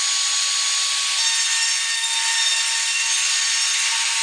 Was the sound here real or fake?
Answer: real